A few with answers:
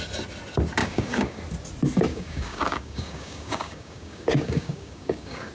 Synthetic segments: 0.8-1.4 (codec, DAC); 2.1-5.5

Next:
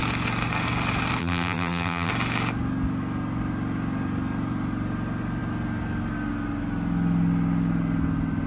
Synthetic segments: 1.2-2.1 (vocoder, BigVGAN v2)

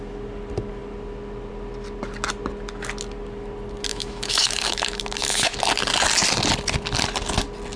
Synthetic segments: 3.9-5.6 (autoencoder, DAC-VAE)

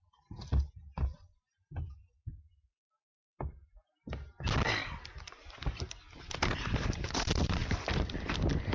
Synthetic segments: none

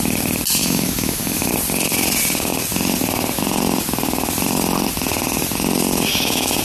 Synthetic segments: 0.6-1.5 (autoencoder, DAC-VAE)

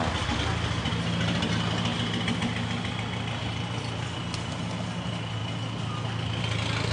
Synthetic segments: 3.4-4.2 (vocoder, BigVGAN v2)